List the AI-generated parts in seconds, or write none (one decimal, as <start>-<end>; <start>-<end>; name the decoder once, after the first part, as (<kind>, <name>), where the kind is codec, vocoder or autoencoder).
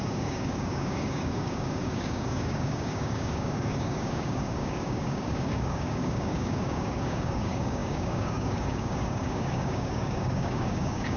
0.0-11.2 (codec, DAC)